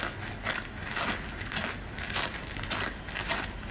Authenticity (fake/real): real